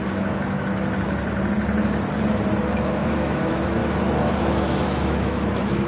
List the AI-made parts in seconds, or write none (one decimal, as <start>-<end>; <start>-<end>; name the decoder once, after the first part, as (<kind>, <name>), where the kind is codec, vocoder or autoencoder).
0.0-0.7 (autoencoder, DAC-VAE); 2.6-3.8; 4.4-5.9